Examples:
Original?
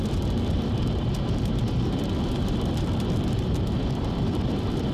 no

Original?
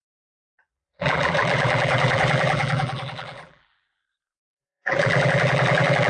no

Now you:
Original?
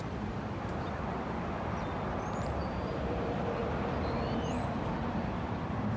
no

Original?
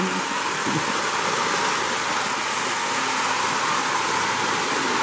yes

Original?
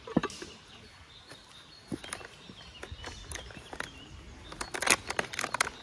yes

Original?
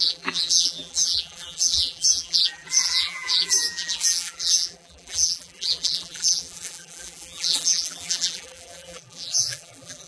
no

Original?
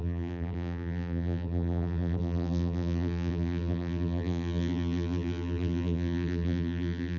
no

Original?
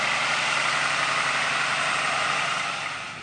no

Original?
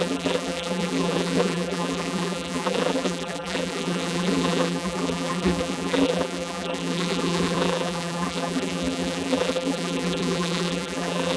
no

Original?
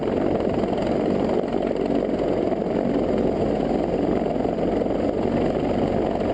yes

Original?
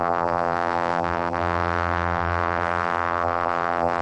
no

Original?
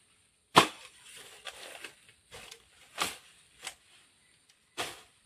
no